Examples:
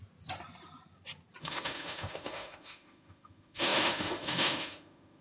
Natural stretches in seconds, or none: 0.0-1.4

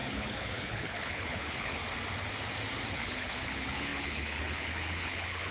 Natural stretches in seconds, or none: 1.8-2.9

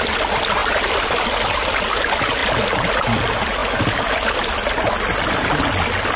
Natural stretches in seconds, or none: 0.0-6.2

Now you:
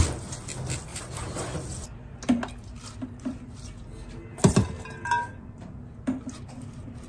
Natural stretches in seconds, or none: 0.0-0.9; 1.4-5.3; 6.1-7.1

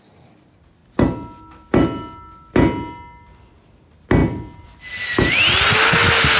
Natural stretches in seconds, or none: 0.0-6.4

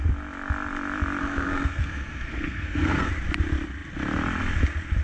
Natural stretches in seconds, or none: 0.0-1.2; 3.1-5.0